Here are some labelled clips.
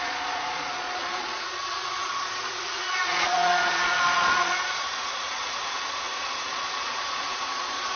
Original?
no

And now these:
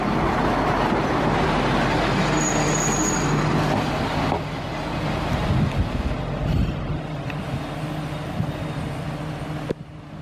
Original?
yes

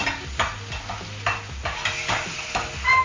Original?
yes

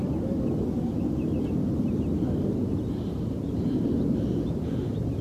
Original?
yes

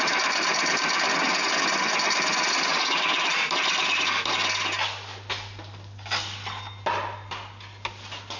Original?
yes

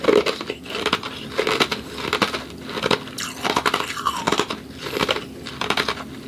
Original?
yes